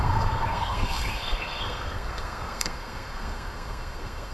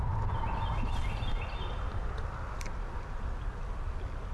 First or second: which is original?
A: second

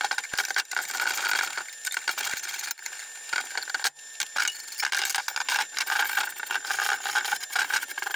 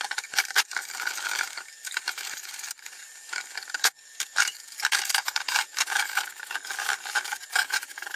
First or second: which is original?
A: first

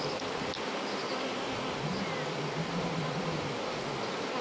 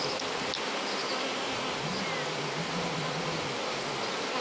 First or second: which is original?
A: second